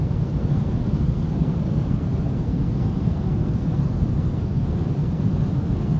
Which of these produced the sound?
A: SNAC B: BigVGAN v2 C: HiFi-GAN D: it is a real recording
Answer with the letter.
A